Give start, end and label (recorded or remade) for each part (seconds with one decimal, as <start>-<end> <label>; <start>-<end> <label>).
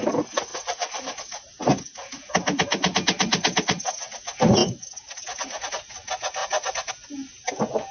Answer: 0.0-0.5 recorded; 0.5-2.3 remade; 2.3-6.4 recorded; 6.4-6.9 remade; 6.9-7.9 recorded